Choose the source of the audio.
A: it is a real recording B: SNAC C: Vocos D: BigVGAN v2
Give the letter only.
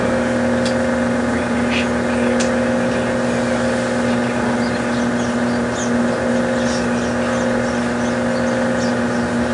A